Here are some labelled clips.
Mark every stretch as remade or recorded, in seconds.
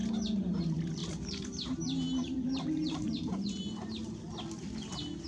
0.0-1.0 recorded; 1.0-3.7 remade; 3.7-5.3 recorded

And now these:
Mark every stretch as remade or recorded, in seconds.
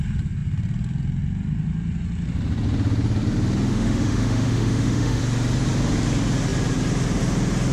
0.0-3.7 recorded; 3.7-5.2 remade; 5.2-7.7 recorded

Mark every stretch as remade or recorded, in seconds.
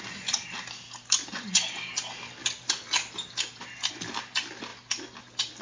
0.0-5.6 recorded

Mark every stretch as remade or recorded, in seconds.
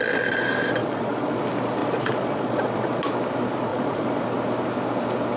0.0-0.8 recorded; 0.8-1.4 remade; 1.4-1.8 recorded; 1.8-3.0 remade; 3.0-3.7 recorded; 3.7-4.2 remade; 4.2-5.4 recorded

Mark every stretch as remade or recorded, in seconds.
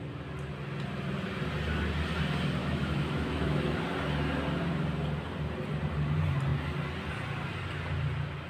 0.0-2.6 recorded; 2.6-3.8 remade; 3.8-8.5 recorded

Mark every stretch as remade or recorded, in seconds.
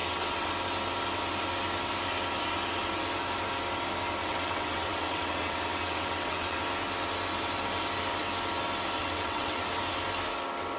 0.0-0.5 remade; 0.5-4.2 recorded; 4.2-6.6 remade; 6.6-9.0 recorded; 9.0-9.7 remade; 9.7-10.8 recorded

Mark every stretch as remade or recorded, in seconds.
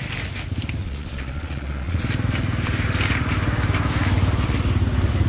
0.0-0.8 recorded; 0.8-2.0 remade; 2.0-5.3 recorded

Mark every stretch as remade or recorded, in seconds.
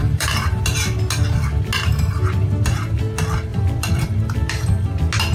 0.0-0.6 remade; 0.6-3.5 recorded; 3.5-4.8 remade; 4.8-5.3 recorded